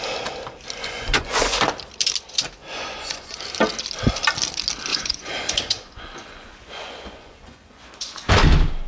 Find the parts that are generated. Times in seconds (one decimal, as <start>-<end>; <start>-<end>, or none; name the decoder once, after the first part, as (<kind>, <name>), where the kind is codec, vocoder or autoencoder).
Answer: 0.8-1.6 (vocoder, Vocos); 2.6-3.4; 4.9-8.3